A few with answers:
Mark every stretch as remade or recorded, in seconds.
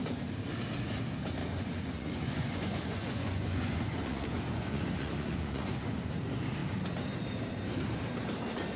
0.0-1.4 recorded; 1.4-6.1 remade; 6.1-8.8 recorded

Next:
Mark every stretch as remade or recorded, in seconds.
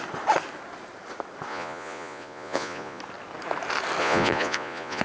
0.0-1.5 recorded; 1.5-3.0 remade; 3.0-4.0 recorded; 4.0-5.0 remade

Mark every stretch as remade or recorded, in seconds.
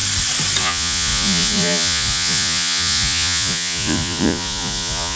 0.0-0.6 recorded; 0.6-5.2 remade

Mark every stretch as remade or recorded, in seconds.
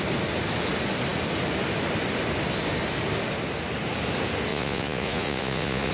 0.0-4.5 recorded; 4.5-5.9 remade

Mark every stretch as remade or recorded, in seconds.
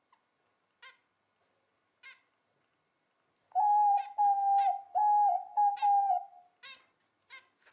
0.0-7.7 recorded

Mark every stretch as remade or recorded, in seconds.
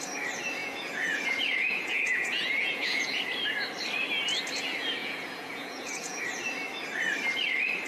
0.0-0.6 recorded; 0.6-3.2 remade; 3.2-5.0 recorded; 5.0-6.2 remade; 6.2-7.9 recorded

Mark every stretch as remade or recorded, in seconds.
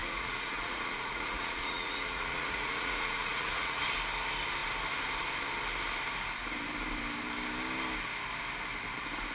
0.0-3.8 remade; 3.8-9.3 recorded